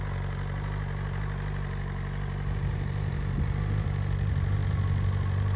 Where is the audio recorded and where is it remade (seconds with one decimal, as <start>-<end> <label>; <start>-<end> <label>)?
0.0-5.6 recorded